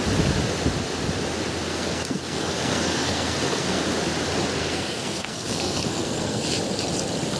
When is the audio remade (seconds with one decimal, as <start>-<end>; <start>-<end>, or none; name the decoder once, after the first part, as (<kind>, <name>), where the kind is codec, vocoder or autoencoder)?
1.7-3.8 (codec, SNAC); 4.6-6.6